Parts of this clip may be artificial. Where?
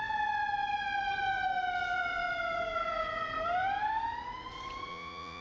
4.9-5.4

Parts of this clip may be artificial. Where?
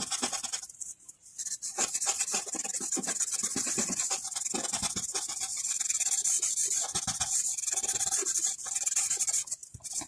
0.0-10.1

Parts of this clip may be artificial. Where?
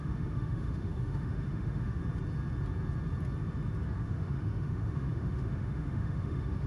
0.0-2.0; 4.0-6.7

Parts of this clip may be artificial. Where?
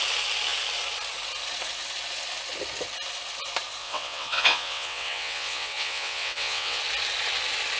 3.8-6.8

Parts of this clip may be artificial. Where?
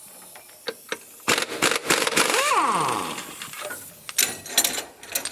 1.8-3.6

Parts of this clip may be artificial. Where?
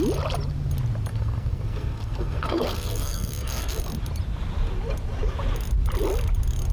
1.1-3.8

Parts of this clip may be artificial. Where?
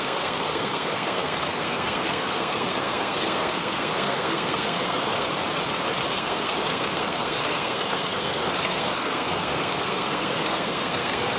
0.0-5.3; 6.1-11.4